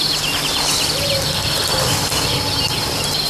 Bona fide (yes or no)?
yes